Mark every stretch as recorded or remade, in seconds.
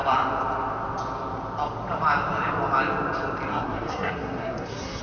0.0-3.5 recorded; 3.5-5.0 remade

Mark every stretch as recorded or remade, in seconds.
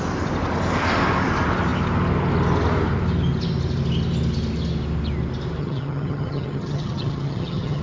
0.0-5.6 recorded; 5.6-7.8 remade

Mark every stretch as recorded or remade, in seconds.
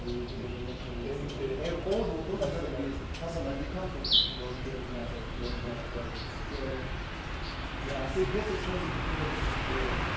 0.0-5.0 recorded; 5.0-7.1 remade; 7.1-10.2 recorded